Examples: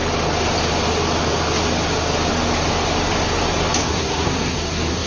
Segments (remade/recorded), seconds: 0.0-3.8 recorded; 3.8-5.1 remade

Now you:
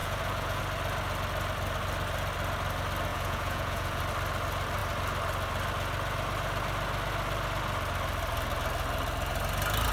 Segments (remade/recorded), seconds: 0.0-0.6 remade; 0.6-3.1 recorded; 3.1-4.0 remade; 4.0-9.9 recorded

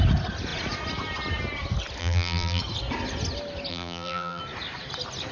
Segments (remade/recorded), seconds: 0.0-2.0 recorded; 2.0-2.6 remade; 2.6-3.7 recorded; 3.7-4.4 remade; 4.4-5.3 recorded

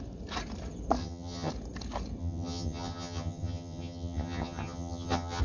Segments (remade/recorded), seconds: 0.0-1.0 recorded; 1.0-1.5 remade; 1.5-2.2 recorded; 2.2-5.4 remade

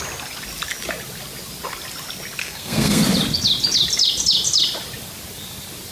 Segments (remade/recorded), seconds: 0.0-2.4 recorded; 2.4-3.0 remade; 3.0-5.9 recorded

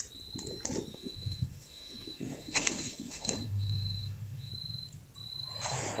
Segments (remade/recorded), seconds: 0.0-0.9 recorded; 0.9-4.5 remade; 4.5-6.0 recorded